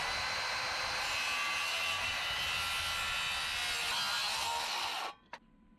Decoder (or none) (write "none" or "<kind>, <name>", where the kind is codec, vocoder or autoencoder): none